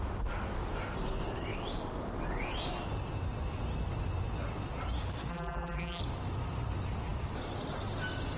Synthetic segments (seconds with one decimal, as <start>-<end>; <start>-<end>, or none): 5.3-6.0

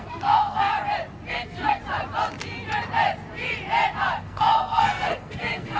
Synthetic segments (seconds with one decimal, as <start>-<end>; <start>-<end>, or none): 0.0-0.7; 1.3-1.8; 4.2-5.8

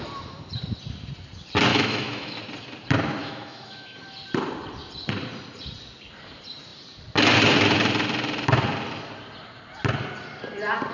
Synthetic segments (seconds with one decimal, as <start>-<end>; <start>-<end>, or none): 1.7-2.4; 3.2-4.0